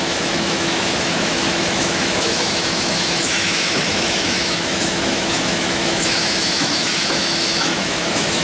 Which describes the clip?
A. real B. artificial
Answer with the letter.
B